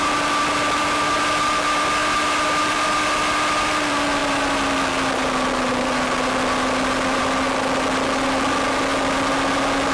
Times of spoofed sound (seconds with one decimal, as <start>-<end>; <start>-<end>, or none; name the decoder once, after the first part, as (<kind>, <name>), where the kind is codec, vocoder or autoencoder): none